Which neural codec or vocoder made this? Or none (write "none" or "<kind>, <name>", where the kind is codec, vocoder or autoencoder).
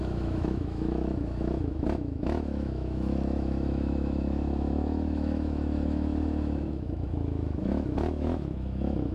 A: autoencoder, DAC-VAE